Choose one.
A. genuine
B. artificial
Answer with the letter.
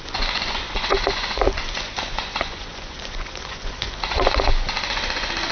B